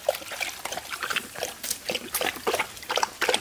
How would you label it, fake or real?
real